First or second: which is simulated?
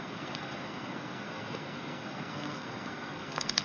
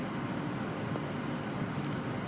first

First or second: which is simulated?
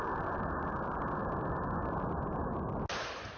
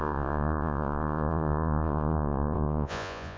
second